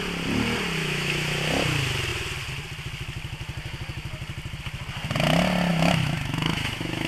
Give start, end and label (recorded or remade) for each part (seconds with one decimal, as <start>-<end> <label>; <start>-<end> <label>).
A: 0.0-0.8 recorded; 0.8-1.4 remade; 1.4-5.7 recorded; 5.7-7.1 remade